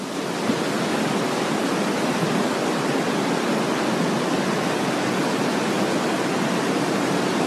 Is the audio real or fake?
real